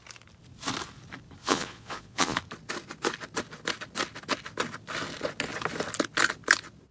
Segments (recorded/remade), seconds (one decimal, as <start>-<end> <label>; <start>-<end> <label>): 0.0-1.4 recorded; 1.4-2.4 remade; 2.4-6.9 recorded

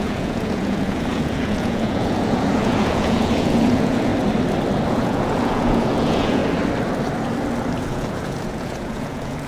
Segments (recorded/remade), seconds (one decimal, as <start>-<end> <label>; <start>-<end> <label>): 0.0-4.1 remade; 4.1-4.9 recorded; 4.9-6.4 remade; 6.4-7.8 recorded; 7.8-9.5 remade